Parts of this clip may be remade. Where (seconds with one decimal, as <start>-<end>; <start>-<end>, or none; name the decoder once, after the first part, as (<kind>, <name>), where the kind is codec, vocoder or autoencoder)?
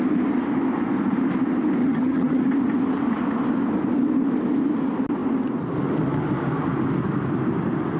1.8-2.4 (vocoder, HiFi-GAN)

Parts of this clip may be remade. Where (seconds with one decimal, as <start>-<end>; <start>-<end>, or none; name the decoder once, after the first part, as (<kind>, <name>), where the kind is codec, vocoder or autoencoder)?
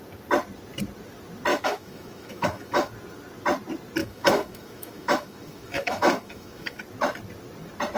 1.5-2.9 (autoencoder, DAC-VAE); 4.0-6.8